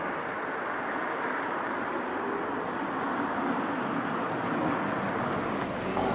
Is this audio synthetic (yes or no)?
no